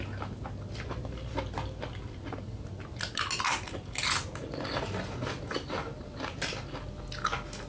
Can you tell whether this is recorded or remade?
recorded